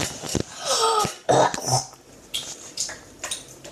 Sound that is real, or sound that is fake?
real